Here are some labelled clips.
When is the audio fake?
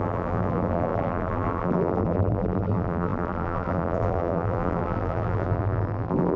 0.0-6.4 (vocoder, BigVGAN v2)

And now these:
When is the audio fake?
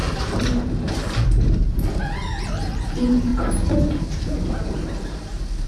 0.0-3.3 (vocoder, BigVGAN v2); 3.9-5.7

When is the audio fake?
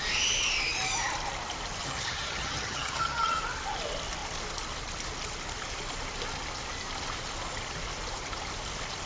1.8-3.4 (vocoder, HiFi-GAN)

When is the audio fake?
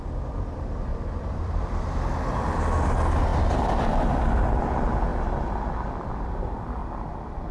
0.9-2.9 (vocoder, BigVGAN v2); 3.3-4.6; 6.8-7.5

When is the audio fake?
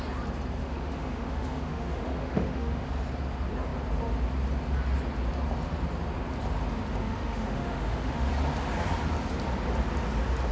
0.6-2.9 (autoencoder, DAC-VAE); 7.0-8.3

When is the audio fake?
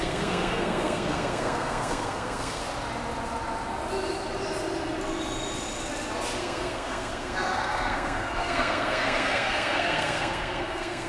0.0-2.6 (codec, SNAC); 6.4-11.1